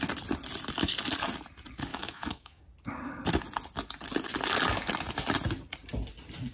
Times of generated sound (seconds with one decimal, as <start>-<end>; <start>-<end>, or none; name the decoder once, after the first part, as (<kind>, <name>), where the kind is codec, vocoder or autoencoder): 1.9-2.6 (autoencoder, DAC-VAE)